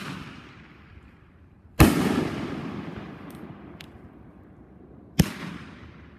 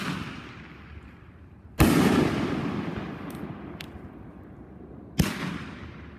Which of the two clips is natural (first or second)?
second